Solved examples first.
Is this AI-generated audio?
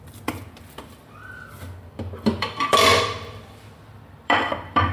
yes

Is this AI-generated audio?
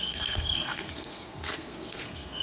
yes